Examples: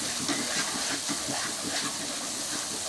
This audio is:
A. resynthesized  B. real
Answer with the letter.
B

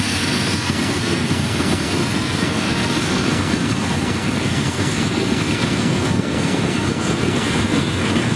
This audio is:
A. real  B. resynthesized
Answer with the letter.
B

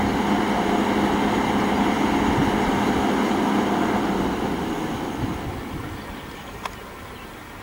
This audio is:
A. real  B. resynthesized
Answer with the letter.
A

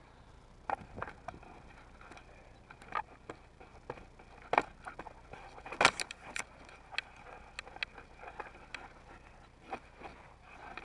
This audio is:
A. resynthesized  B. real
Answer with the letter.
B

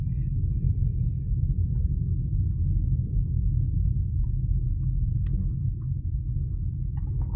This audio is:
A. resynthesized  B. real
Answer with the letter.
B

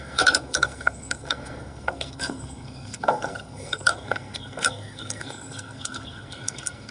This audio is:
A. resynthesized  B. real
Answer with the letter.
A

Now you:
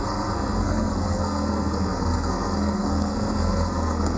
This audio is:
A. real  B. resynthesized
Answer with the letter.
B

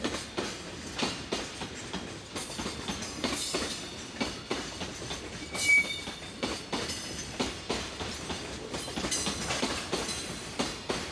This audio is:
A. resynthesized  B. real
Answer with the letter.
B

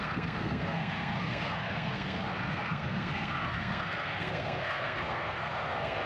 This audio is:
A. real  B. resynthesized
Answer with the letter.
B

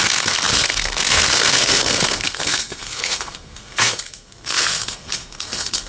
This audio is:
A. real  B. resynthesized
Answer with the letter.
B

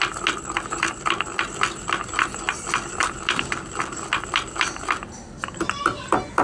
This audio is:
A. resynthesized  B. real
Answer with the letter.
B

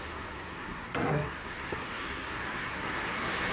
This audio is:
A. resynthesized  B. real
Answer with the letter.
A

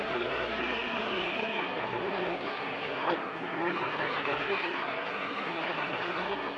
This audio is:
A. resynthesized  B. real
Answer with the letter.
A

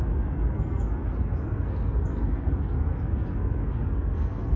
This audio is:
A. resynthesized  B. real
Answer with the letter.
A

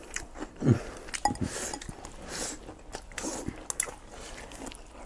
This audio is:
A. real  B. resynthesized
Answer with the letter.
A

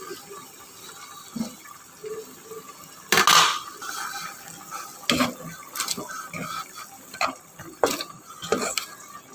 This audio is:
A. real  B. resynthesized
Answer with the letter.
A